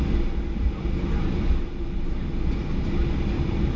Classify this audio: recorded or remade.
recorded